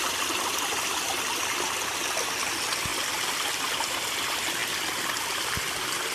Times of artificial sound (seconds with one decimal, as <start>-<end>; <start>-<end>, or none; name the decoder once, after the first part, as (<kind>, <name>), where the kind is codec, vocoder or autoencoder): none